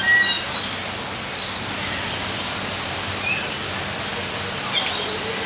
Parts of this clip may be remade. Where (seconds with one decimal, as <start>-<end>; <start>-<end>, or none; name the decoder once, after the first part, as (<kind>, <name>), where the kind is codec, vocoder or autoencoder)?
none